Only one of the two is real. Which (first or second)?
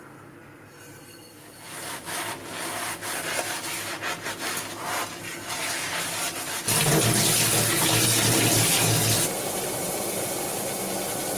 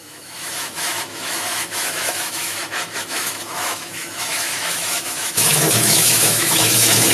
first